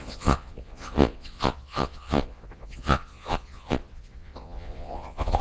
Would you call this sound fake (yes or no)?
yes